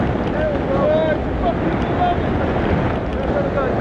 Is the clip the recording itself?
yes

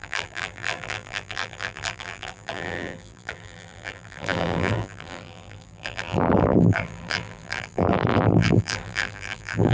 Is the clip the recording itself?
no